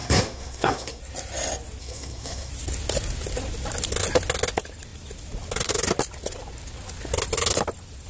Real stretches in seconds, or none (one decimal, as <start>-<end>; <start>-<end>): 1.0-1.8; 2.5-8.1